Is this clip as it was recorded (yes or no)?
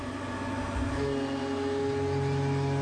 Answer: yes